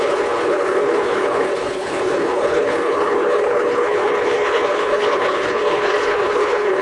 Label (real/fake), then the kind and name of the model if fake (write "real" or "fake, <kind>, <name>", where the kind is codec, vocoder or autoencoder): fake, codec, HILCodec